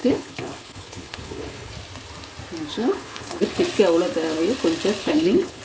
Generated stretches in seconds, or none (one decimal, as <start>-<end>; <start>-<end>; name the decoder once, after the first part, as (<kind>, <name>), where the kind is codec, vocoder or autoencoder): 0.0-1.7 (codec, HILCodec); 2.7-3.4; 5.0-5.6